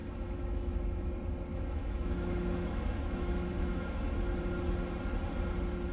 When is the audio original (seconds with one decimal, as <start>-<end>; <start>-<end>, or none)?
1.1-1.5; 4.2-5.9